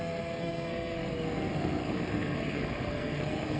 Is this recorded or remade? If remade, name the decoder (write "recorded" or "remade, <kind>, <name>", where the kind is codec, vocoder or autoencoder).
remade, codec, SNAC